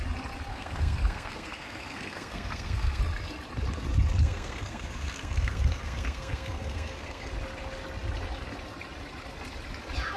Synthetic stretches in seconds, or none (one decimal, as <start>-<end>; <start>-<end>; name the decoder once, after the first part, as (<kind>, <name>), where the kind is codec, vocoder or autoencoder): 0.5-3.0 (codec, SNAC); 4.2-7.3